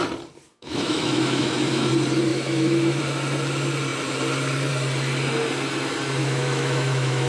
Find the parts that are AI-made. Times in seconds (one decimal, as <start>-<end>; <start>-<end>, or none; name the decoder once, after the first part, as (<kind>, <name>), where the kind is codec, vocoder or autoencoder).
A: 0.5-1.9 (autoencoder, DAC-VAE); 2.3-3.0; 6.2-7.3